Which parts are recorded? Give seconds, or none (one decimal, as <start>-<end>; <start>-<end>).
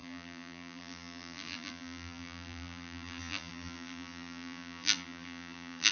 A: none